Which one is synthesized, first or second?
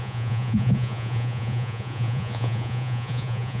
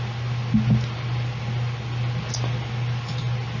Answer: first